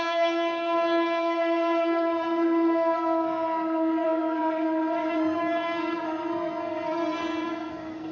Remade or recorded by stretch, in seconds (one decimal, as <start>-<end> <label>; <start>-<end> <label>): 0.0-8.1 remade